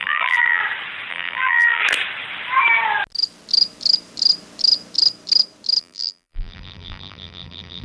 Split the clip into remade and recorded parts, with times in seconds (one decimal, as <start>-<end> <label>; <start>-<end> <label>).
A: 0.0-0.6 remade; 0.6-1.1 recorded; 1.1-1.8 remade; 1.8-5.8 recorded; 5.8-7.8 remade